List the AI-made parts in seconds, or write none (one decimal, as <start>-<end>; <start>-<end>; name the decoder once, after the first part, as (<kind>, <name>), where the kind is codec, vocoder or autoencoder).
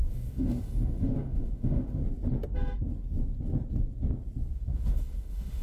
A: 0.0-2.0 (autoencoder, DAC-VAE); 4.5-5.6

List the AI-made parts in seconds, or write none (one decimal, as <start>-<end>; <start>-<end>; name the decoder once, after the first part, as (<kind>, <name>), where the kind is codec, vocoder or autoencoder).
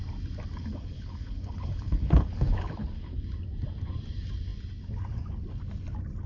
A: 0.6-3.2 (codec, HILCodec)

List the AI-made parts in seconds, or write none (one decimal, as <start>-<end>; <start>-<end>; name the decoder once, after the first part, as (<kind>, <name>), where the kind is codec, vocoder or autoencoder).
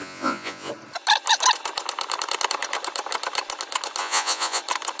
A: 0.0-0.7 (vocoder, Vocos); 4.0-4.6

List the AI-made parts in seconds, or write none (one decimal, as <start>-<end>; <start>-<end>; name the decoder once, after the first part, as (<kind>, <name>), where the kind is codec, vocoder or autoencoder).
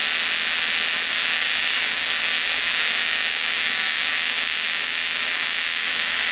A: 1.1-6.3 (codec, DAC)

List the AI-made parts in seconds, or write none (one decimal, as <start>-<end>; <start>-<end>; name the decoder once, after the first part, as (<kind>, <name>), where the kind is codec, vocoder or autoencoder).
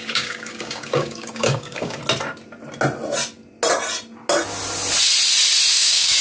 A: 0.0-2.0 (codec, DAC); 5.7-6.2